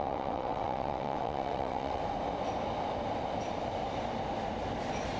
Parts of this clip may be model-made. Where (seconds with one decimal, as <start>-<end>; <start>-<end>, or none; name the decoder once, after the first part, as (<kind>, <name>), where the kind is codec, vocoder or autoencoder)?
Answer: 0.0-2.0 (vocoder, WaveNeXt)